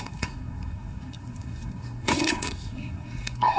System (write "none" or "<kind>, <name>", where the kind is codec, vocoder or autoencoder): codec, SNAC